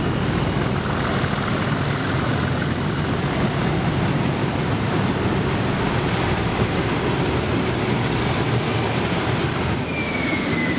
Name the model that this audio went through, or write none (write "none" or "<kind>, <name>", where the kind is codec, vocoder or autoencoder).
none